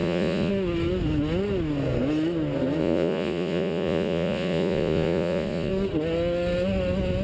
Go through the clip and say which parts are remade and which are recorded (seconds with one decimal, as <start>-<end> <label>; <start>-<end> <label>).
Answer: 0.0-0.5 remade; 0.5-2.8 recorded; 2.8-5.7 remade; 5.7-7.2 recorded